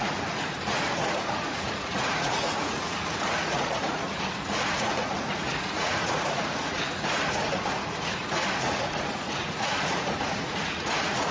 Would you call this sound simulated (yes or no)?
yes